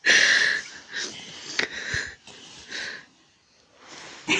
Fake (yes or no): no